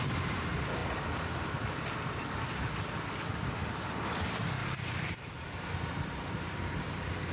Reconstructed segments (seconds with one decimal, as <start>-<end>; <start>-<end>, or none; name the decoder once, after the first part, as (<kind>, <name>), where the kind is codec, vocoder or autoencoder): 4.6-6.6 (vocoder, BigVGAN v2)